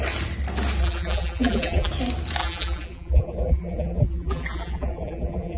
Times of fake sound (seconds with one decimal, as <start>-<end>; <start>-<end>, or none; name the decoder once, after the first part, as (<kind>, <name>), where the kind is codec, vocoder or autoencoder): 0.8-1.9 (vocoder, BigVGAN v2); 2.4-5.6